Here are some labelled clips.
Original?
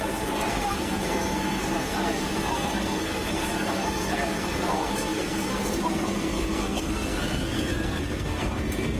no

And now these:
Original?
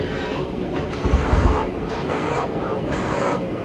no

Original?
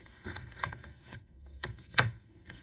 no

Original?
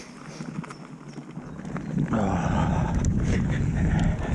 yes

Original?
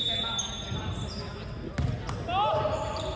yes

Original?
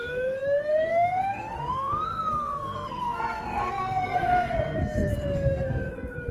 no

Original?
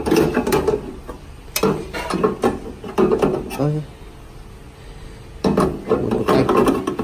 yes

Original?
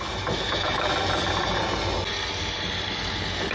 yes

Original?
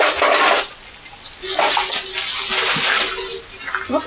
yes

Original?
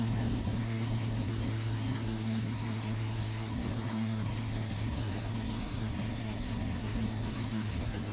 no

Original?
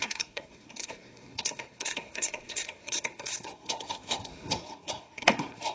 no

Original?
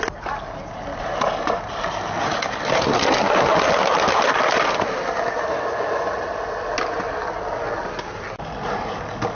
yes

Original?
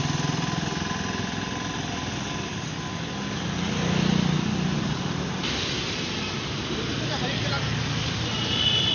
yes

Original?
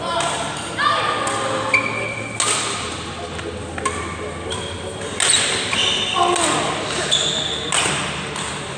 yes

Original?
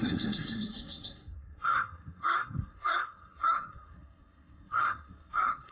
no